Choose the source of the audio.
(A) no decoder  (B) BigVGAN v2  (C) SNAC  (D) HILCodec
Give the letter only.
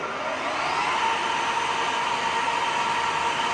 A